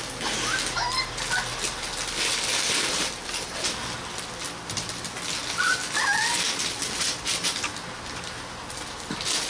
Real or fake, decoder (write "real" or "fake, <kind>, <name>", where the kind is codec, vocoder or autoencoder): real